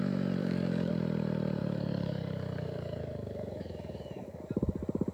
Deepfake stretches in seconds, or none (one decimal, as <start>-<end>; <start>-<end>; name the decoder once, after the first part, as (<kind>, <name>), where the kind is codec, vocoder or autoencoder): 0.4-0.9 (codec, DAC); 1.6-4.4